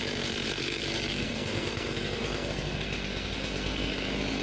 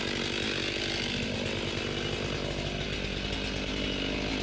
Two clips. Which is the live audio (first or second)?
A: second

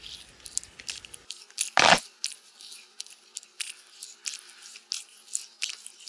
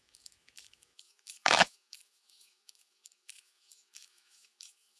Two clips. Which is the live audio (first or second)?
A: first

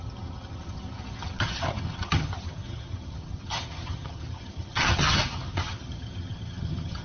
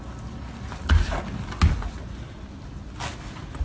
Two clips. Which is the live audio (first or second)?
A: second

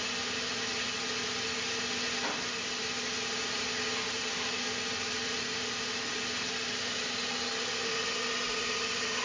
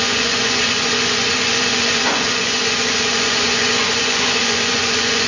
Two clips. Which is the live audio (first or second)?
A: first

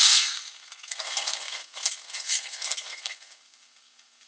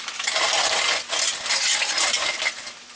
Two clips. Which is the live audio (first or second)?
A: second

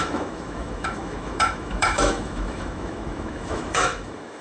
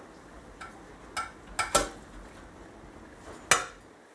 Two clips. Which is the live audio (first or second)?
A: second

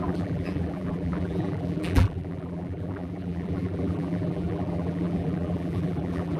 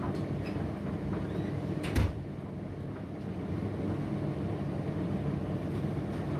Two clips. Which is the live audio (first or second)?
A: second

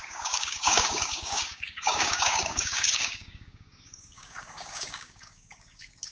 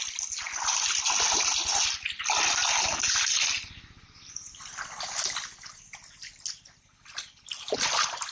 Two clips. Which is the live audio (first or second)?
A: second